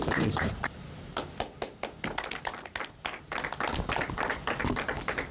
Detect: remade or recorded recorded